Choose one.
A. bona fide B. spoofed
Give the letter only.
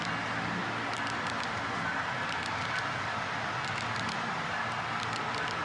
A